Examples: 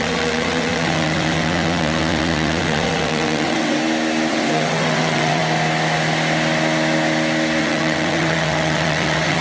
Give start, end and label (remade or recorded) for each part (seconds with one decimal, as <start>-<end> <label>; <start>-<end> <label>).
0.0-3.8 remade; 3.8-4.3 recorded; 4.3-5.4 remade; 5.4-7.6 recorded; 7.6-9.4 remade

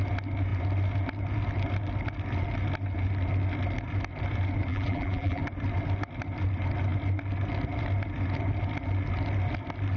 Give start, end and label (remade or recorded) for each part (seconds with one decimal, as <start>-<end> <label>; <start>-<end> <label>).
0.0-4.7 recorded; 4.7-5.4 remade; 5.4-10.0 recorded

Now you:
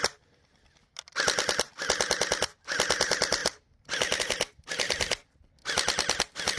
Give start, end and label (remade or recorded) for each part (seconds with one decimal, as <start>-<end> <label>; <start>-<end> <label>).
0.0-6.6 recorded

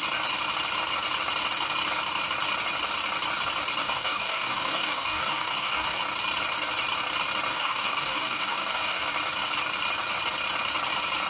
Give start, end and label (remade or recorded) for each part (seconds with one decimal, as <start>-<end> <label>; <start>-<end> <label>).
0.0-3.8 recorded; 3.8-6.0 remade; 6.0-7.5 recorded; 7.5-9.0 remade; 9.0-11.3 recorded

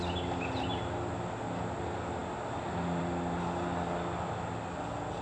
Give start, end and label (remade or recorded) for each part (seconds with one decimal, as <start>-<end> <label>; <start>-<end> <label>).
0.0-5.2 recorded

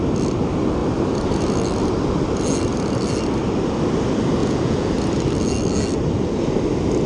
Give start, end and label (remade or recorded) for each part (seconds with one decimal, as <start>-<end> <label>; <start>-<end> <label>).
0.0-4.4 recorded; 4.4-4.9 remade; 4.9-7.1 recorded